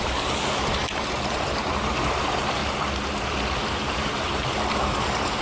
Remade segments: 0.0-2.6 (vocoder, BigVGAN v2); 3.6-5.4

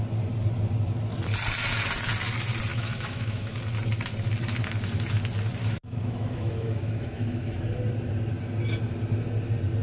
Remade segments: 2.7-3.6 (autoencoder, DAC-VAE); 5.6-7.8

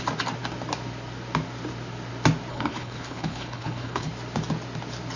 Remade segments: 2.5-4.1 (codec, HILCodec)

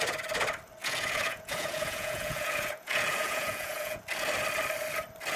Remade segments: 0.8-4.0 (vocoder, Vocos)

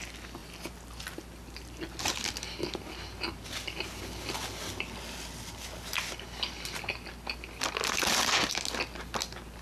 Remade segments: none

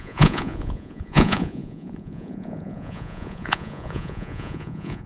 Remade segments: 0.0-5.1 (vocoder, Vocos)